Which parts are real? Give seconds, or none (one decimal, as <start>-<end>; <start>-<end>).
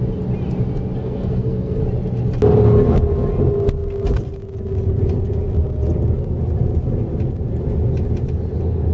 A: 0.0-1.0; 1.8-8.9